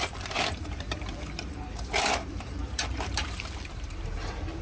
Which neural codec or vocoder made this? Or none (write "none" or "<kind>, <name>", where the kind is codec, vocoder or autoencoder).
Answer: vocoder, BigVGAN v2